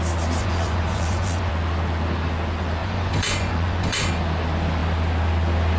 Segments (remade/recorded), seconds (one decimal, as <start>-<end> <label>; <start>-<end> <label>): 0.0-0.4 recorded; 0.4-1.5 remade; 1.5-2.8 recorded; 2.8-4.1 remade; 4.1-5.8 recorded